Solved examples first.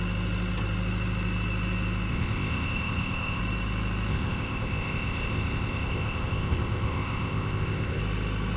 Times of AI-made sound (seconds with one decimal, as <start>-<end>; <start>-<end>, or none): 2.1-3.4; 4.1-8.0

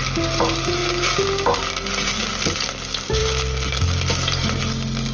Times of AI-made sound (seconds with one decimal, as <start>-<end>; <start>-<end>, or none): none

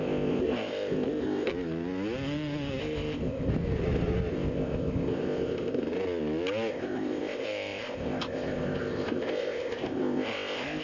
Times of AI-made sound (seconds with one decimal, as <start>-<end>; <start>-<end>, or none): 0.0-1.5; 2.8-3.5; 4.3-5.8; 6.7-10.8

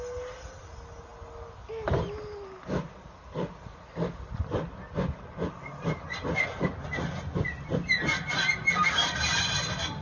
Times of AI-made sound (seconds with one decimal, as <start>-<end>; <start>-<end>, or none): none

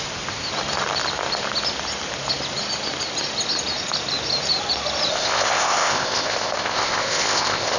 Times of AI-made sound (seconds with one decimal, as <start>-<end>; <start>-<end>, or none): 5.1-7.8

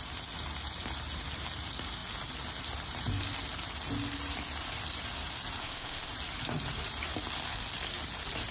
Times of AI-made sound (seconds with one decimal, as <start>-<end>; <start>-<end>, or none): 5.6-6.1

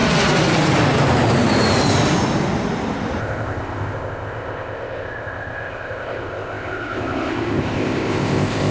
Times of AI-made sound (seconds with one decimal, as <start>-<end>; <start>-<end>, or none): 3.2-8.7